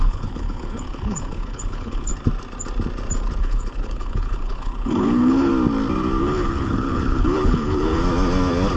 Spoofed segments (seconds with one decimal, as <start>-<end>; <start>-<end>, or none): 0.0-2.1; 3.4-5.5; 6.2-8.0